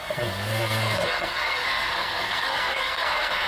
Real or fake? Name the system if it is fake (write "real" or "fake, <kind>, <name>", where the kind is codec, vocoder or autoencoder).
fake, codec, SNAC